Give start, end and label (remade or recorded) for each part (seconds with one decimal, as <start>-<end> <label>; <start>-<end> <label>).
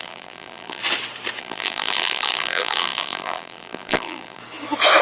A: 0.0-0.8 remade; 0.8-1.4 recorded; 1.4-4.4 remade; 4.4-5.0 recorded